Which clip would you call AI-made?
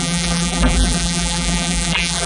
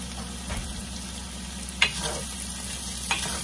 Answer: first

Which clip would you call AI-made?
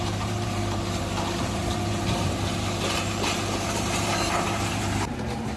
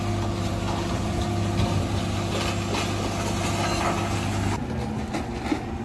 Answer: first